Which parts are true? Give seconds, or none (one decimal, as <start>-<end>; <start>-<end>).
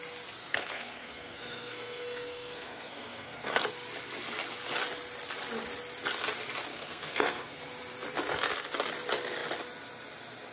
0.0-0.4; 3.7-6.7; 7.6-10.5